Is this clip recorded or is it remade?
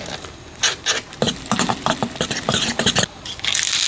recorded